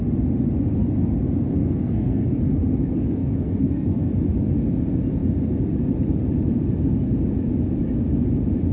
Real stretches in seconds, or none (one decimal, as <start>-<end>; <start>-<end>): 0.0-1.6; 2.3-3.2; 4.1-8.7